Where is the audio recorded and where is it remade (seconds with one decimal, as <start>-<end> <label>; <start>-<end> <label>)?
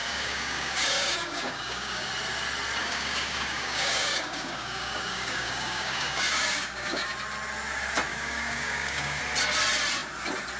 0.0-2.1 remade; 2.1-2.8 recorded; 2.8-7.1 remade; 7.1-8.1 recorded; 8.1-9.2 remade; 9.2-10.6 recorded